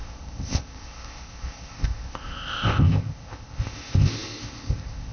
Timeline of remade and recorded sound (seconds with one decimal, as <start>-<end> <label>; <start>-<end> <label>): 0.0-5.1 remade